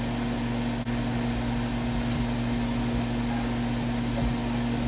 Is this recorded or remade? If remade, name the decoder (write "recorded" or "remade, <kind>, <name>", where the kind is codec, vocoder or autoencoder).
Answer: recorded